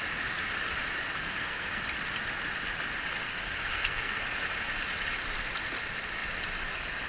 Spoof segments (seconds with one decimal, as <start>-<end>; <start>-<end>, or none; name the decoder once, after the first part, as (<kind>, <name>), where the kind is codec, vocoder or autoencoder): 1.2-1.8 (codec, SNAC); 3.2-4.2